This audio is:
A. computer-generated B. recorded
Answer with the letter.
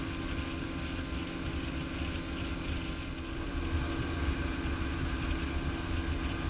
B